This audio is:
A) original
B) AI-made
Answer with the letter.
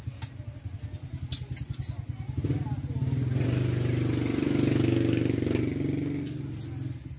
A